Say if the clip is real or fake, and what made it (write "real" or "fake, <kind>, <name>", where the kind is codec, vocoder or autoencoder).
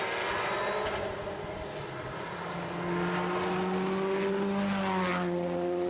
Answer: real